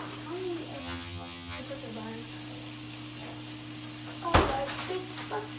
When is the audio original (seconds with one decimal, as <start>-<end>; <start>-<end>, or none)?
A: 0.0-0.8; 1.6-5.6